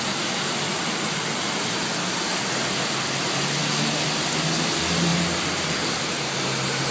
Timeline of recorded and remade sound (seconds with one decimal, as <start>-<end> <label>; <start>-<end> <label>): 0.0-6.9 recorded